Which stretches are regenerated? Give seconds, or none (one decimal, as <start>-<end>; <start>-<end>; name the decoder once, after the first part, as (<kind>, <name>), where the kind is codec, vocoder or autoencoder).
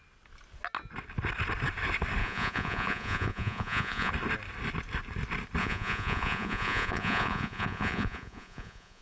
2.2-4.1 (vocoder, Vocos); 5.6-9.0